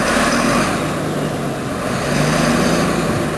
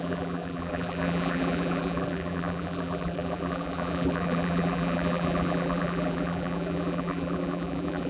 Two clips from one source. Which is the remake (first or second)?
second